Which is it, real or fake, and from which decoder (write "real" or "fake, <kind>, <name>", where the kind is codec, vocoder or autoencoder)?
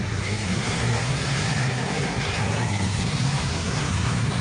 fake, codec, SNAC